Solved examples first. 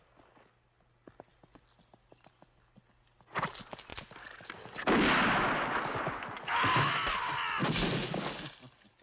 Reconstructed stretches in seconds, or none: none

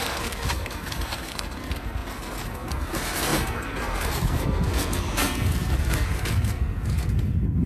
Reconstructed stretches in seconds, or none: 0.0-7.7 (codec, SNAC)